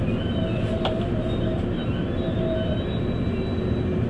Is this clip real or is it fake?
real